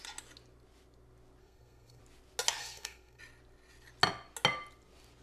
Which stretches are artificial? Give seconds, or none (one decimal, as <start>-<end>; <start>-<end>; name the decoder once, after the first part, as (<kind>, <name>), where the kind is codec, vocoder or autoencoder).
1.4-2.0 (codec, SNAC); 2.6-3.2